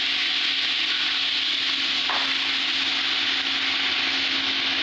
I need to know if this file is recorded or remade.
recorded